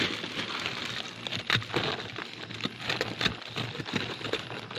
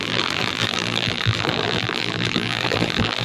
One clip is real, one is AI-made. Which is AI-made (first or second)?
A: second